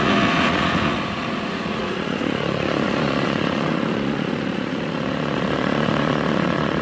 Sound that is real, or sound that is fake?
fake